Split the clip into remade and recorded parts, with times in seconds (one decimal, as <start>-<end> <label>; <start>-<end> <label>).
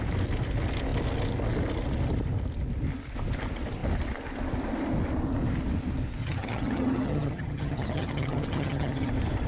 0.0-6.2 recorded; 6.2-9.1 remade; 9.1-9.5 recorded